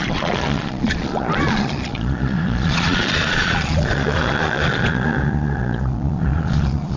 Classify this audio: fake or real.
fake